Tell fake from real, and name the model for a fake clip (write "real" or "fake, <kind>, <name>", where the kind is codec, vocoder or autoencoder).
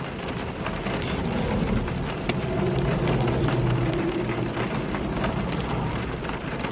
real